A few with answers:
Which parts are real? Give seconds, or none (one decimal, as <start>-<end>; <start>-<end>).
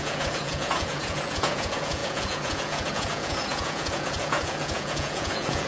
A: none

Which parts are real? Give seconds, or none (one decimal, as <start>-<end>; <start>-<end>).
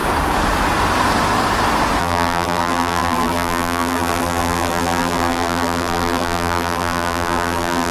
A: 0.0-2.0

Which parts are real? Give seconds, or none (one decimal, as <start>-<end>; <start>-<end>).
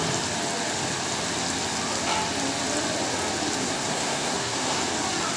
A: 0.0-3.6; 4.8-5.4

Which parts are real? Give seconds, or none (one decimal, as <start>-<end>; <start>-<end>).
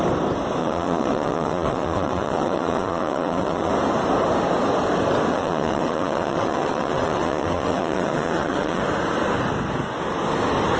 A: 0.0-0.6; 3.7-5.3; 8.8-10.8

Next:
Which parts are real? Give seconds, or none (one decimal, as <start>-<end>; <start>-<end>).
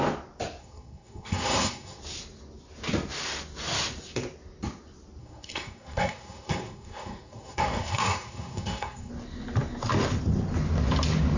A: 0.0-0.6; 2.0-5.2; 9.1-11.4